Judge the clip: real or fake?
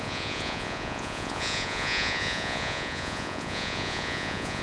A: fake